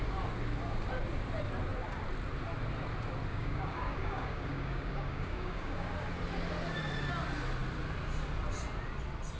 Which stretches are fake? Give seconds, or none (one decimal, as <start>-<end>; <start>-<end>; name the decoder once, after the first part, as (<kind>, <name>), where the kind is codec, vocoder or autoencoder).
3.3-5.9 (codec, DAC)